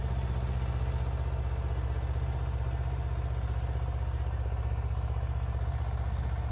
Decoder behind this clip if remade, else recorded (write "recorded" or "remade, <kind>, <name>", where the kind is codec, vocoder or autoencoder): recorded